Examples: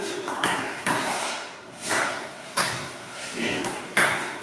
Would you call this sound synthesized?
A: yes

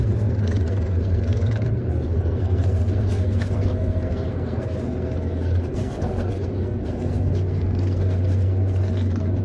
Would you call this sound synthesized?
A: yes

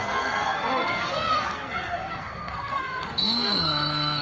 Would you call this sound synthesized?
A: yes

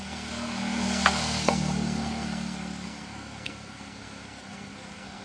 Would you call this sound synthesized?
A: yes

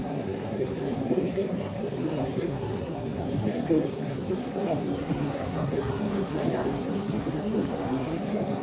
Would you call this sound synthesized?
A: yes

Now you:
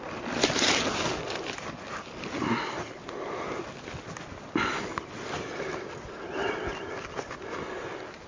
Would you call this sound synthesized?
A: no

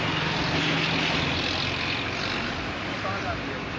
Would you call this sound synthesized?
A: no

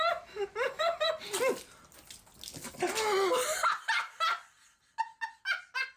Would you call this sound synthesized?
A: no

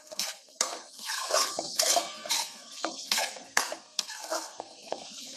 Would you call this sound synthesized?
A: yes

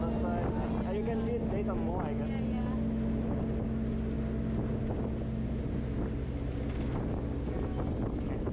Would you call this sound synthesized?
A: no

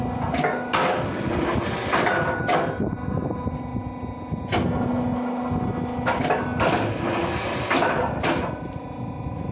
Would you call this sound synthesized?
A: no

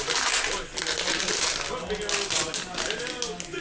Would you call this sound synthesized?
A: no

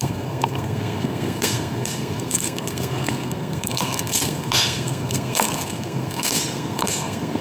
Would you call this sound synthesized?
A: yes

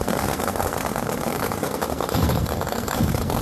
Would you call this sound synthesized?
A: yes